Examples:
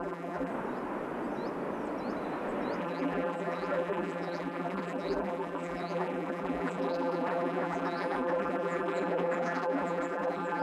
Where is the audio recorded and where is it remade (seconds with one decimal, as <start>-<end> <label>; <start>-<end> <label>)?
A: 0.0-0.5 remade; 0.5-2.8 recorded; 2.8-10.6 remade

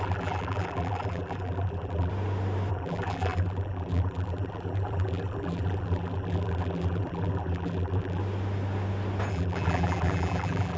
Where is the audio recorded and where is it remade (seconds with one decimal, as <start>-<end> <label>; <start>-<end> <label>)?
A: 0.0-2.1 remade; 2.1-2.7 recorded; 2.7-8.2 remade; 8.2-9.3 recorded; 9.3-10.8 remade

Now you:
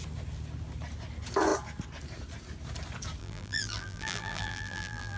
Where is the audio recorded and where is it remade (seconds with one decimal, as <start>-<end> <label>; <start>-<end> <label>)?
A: 0.0-3.2 recorded; 3.2-5.2 remade